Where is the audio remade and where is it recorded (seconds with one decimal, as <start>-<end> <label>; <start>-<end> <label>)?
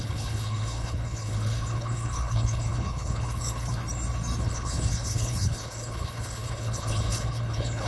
0.0-3.8 remade; 3.8-4.4 recorded; 4.4-7.9 remade